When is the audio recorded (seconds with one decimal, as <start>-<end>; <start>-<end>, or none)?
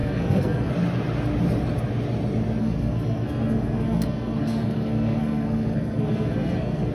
0.7-2.6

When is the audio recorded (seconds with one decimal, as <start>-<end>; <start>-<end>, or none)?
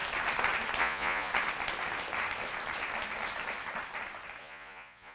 0.0-0.8; 1.3-4.4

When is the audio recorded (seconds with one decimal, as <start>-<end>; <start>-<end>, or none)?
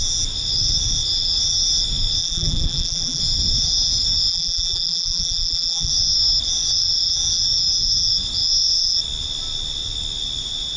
0.0-2.2; 3.2-4.3; 5.9-10.8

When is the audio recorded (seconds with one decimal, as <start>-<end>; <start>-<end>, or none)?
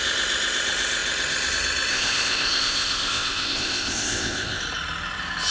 0.0-1.9; 4.6-5.5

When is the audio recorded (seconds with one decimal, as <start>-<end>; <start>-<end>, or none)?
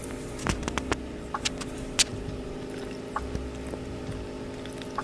0.0-5.0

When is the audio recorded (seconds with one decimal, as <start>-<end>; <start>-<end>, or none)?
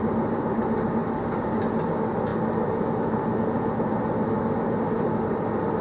0.0-5.8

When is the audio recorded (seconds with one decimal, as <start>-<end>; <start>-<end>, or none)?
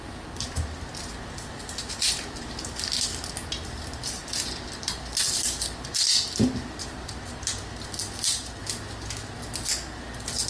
0.0-10.5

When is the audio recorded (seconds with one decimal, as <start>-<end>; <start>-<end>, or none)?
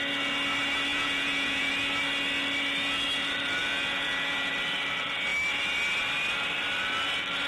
0.0-0.9; 1.7-3.6; 4.5-7.5